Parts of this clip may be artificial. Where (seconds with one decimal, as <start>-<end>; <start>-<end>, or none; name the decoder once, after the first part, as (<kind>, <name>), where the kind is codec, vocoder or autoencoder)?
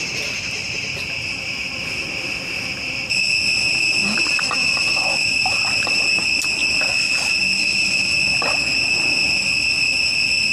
4.8-6.0 (vocoder, BigVGAN v2)